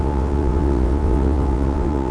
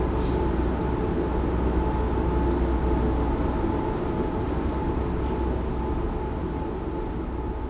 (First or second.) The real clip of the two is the second